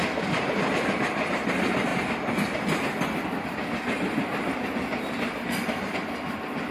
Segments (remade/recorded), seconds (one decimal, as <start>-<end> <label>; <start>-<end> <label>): 0.0-1.0 remade; 1.0-6.7 recorded

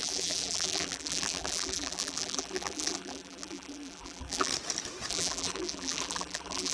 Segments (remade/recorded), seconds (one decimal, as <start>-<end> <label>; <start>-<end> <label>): 0.0-4.5 remade; 4.5-5.1 recorded; 5.1-6.7 remade

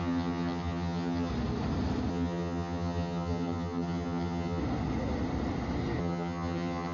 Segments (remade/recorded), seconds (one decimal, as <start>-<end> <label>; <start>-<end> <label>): 0.0-1.3 remade; 1.3-2.1 recorded; 2.1-4.6 remade; 4.6-6.0 recorded; 6.0-6.9 remade

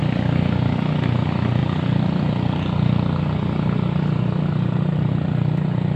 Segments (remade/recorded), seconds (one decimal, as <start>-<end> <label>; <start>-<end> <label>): 0.0-6.0 recorded

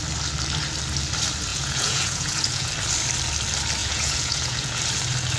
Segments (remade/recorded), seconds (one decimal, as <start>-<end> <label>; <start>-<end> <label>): 0.0-1.5 recorded; 1.5-2.7 remade; 2.7-3.8 recorded; 3.8-4.8 remade; 4.8-5.4 recorded